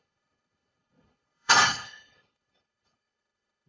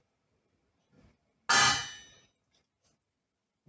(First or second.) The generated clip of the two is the first